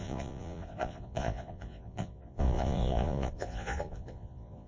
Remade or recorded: remade